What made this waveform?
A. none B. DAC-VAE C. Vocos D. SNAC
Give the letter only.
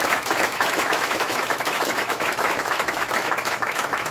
B